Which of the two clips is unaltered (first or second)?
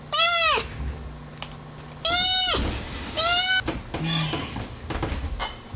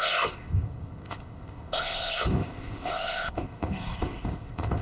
first